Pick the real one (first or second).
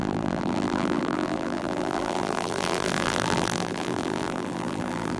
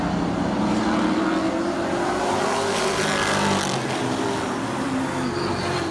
second